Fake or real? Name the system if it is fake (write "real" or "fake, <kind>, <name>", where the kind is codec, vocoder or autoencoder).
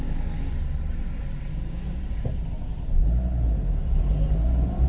real